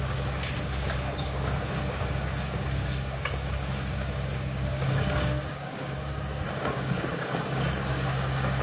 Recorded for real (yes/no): no